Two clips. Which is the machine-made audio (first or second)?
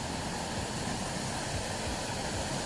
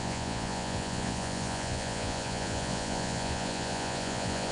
second